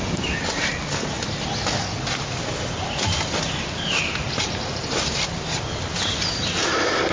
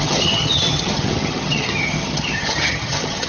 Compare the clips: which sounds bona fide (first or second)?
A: first